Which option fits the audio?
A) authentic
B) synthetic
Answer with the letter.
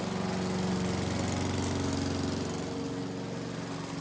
A